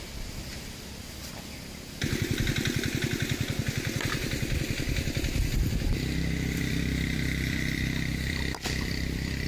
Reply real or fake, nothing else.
fake